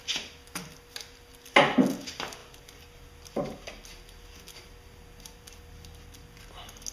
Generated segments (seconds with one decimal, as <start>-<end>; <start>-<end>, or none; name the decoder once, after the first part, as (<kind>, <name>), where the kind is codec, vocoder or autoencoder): none